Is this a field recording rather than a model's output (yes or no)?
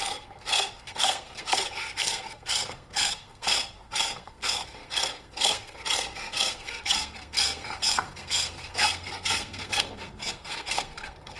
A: no